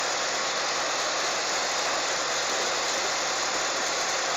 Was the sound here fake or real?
real